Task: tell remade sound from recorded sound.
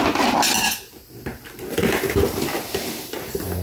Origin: recorded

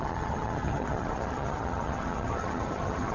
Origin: remade